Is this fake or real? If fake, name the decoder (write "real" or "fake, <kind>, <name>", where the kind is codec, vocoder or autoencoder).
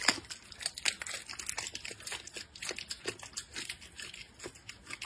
real